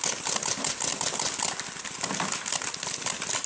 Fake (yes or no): no